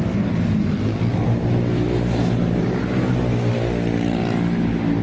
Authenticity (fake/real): real